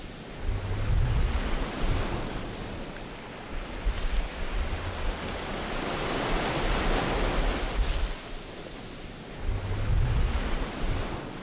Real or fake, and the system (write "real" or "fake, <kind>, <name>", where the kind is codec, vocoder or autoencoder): real